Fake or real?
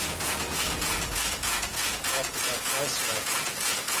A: fake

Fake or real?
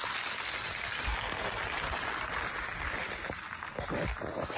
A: real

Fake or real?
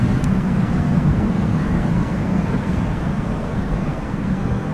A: fake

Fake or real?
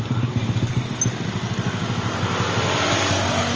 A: real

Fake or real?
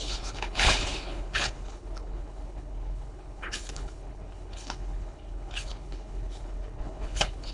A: fake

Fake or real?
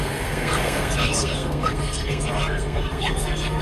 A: fake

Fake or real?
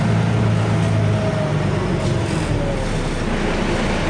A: real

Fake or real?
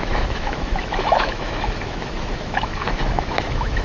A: fake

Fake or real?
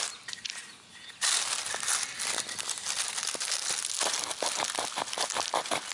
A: real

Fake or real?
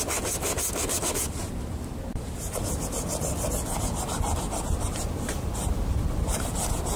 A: real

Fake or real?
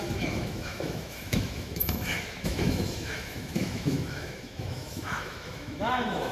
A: fake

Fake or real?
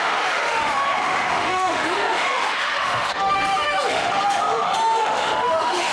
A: fake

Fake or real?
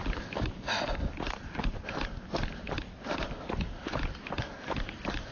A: real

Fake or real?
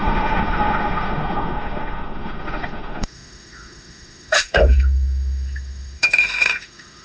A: fake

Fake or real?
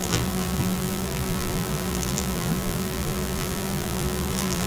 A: fake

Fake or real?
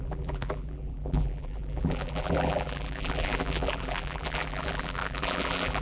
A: fake